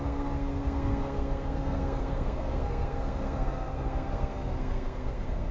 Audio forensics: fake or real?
fake